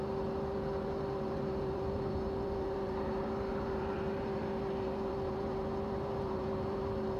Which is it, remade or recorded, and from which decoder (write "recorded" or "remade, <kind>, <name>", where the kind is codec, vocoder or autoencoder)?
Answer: remade, vocoder, BigVGAN v2